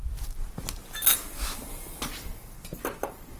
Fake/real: real